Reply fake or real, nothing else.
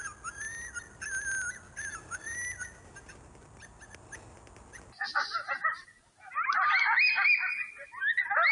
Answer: real